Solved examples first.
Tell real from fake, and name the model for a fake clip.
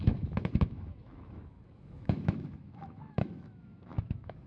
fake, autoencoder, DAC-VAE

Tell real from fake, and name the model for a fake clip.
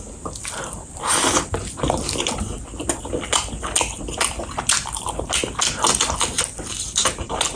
real